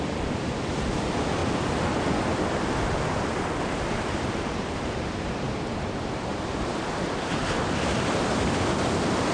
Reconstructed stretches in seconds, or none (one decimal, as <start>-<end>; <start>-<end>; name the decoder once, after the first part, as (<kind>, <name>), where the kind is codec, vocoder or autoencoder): 0.0-1.4 (vocoder, BigVGAN v2); 3.6-9.3

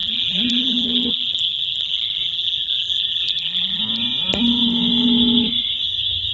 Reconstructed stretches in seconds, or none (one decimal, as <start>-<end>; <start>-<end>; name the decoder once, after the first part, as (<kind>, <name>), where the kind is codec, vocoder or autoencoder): 0.0-3.8 (vocoder, BigVGAN v2)

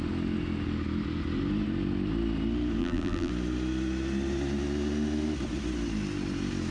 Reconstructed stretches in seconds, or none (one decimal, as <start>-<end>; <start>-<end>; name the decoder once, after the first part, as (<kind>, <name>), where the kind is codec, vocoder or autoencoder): 2.8-3.3 (vocoder, BigVGAN v2)

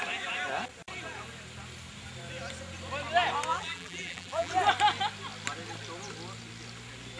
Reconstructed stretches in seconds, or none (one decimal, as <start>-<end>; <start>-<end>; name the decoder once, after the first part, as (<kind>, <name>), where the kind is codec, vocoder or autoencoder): 3.5-4.5 (vocoder, BigVGAN v2)

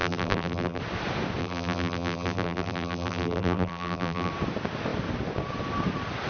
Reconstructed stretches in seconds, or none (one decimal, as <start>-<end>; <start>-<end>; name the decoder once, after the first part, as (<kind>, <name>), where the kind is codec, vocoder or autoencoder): 0.0-0.8 (vocoder, BigVGAN v2); 1.4-4.3